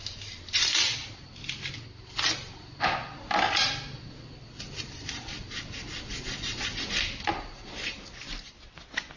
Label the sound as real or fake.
real